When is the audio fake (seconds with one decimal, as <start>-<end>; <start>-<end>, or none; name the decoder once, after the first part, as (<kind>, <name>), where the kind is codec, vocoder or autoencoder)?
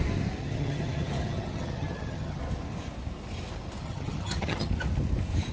0.4-2.4 (vocoder, HiFi-GAN); 3.8-4.7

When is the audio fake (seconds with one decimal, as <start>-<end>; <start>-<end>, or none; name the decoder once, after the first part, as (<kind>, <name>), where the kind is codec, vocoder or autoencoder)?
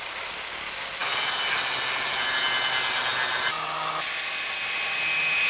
none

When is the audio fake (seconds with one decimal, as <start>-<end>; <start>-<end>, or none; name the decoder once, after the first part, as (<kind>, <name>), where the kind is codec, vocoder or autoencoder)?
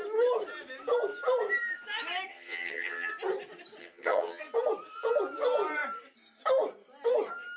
2.3-3.1 (vocoder, HiFi-GAN); 3.8-4.4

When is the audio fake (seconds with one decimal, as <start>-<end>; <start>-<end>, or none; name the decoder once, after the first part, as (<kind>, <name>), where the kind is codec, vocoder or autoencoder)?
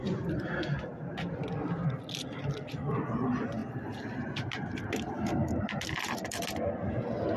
none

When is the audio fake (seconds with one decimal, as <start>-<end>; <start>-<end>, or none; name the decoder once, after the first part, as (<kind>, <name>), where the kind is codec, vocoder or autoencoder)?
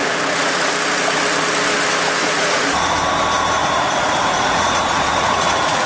0.0-0.7 (vocoder, Vocos); 2.2-3.0; 3.6-5.9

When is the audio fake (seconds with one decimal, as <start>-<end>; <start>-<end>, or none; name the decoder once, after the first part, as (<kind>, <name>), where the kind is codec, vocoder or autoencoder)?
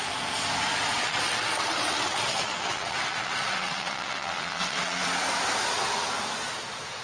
1.0-5.0 (vocoder, WaveNeXt)